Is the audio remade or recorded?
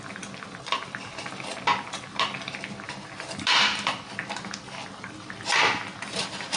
recorded